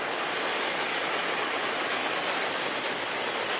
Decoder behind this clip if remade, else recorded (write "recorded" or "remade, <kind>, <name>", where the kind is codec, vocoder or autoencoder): recorded